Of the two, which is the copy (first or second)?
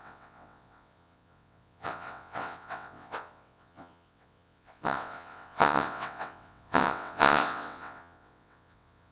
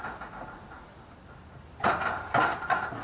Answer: first